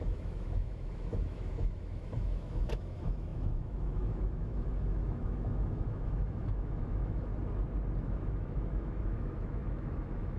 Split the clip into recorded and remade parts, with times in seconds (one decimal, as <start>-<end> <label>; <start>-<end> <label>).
0.0-7.3 remade; 7.3-8.0 recorded; 8.0-10.4 remade

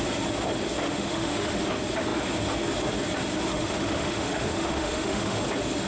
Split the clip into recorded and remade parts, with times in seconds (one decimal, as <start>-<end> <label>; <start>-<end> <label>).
0.0-0.8 recorded; 0.8-1.6 remade; 1.6-3.5 recorded; 3.5-5.4 remade; 5.4-5.9 recorded

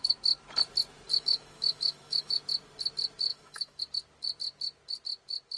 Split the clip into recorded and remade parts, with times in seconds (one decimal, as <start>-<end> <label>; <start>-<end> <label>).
0.0-1.1 recorded; 1.1-2.4 remade; 2.4-3.3 recorded; 3.3-3.8 remade; 3.8-5.6 recorded

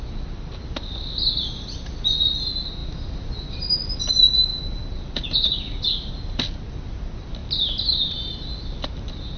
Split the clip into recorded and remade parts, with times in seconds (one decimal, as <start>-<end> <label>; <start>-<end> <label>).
0.0-9.4 recorded

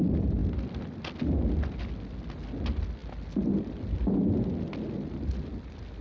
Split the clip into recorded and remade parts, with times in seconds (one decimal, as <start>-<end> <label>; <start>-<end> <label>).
0.0-6.0 recorded